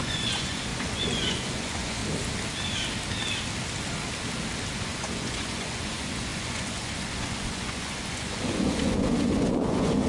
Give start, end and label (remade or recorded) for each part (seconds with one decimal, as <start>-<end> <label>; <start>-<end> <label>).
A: 0.0-2.0 remade; 2.0-4.7 recorded; 4.7-10.1 remade

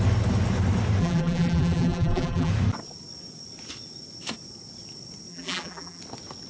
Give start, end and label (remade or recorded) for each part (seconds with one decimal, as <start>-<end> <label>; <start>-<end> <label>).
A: 0.0-1.0 recorded; 1.0-2.5 remade; 2.5-5.3 recorded; 5.3-6.0 remade; 6.0-6.5 recorded

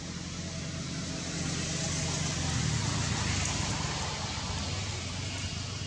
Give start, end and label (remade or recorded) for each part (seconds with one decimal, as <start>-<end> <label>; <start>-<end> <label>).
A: 0.0-5.9 recorded

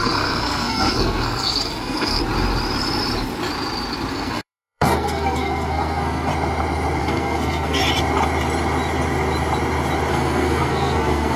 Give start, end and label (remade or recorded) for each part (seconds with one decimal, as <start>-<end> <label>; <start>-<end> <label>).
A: 0.0-2.2 remade; 2.2-4.1 recorded; 4.1-6.3 remade; 6.3-7.0 recorded; 7.0-7.8 remade; 7.8-10.1 recorded; 10.1-11.4 remade

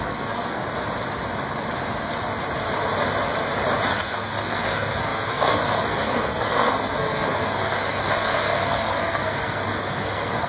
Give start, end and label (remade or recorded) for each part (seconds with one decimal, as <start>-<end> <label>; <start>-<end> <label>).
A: 0.0-0.6 remade; 0.6-3.9 recorded; 3.9-10.5 remade

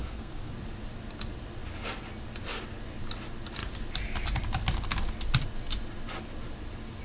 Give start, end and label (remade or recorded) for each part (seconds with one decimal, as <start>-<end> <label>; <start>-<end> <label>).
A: 0.0-0.5 remade; 0.5-7.0 recorded